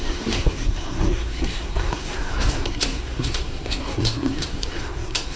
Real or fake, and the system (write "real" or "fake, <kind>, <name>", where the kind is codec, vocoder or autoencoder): fake, codec, SNAC